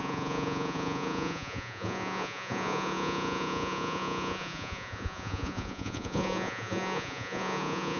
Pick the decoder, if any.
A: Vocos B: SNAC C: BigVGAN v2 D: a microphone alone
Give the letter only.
A